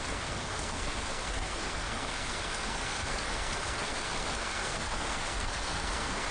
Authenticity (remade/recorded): remade